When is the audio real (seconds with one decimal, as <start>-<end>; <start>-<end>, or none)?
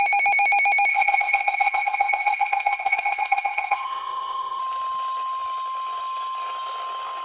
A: 0.0-0.9; 4.6-7.2